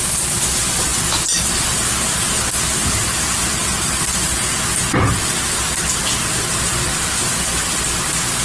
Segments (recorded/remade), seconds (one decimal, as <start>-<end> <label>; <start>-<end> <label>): 0.0-8.4 recorded